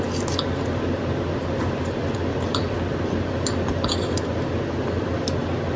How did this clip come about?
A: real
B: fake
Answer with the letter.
A